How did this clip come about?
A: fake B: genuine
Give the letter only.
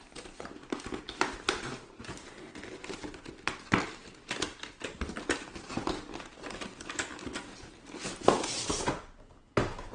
B